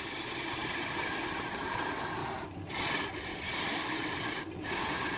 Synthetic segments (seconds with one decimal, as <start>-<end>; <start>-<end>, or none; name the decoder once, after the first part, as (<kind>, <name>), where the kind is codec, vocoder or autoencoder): 0.6-1.7 (vocoder, BigVGAN v2)